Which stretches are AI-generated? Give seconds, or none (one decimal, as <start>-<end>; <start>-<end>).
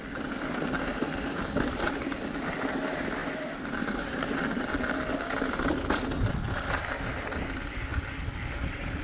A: 3.2-4.4